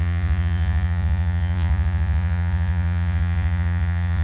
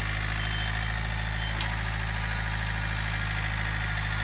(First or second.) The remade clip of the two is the first